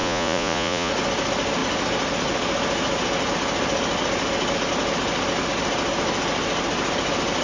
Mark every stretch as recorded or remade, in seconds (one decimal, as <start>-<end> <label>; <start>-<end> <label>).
0.0-0.9 remade; 0.9-7.4 recorded